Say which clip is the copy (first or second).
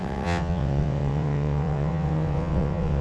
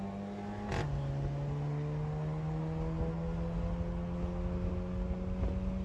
first